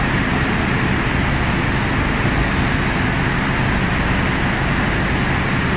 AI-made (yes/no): no